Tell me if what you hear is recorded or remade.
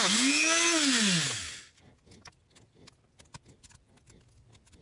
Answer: recorded